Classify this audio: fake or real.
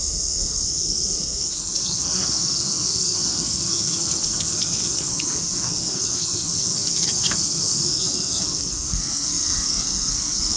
fake